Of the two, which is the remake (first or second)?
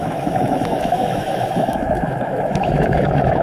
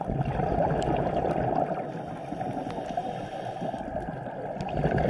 first